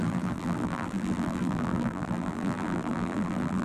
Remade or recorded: remade